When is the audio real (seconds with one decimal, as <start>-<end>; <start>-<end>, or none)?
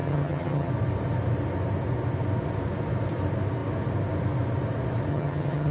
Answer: 0.7-5.1